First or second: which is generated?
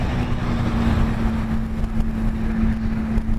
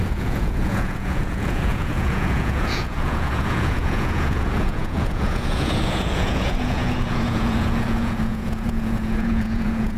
second